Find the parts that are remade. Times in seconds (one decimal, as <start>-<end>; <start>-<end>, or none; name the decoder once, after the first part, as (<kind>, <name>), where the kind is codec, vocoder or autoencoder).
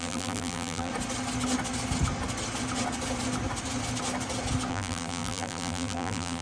0.0-0.9 (vocoder, BigVGAN v2); 4.7-6.4